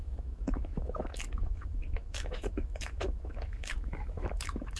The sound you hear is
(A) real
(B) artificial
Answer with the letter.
B